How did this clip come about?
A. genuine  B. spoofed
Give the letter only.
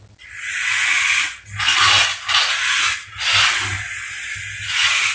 A